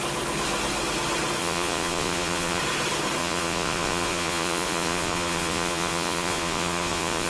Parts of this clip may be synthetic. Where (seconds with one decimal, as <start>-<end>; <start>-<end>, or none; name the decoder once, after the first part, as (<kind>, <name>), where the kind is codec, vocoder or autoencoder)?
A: 1.4-2.6 (vocoder, Vocos); 3.2-7.3